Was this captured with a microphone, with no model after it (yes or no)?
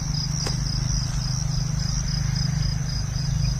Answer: yes